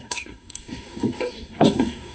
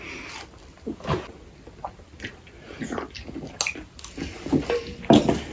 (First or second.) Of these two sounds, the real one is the second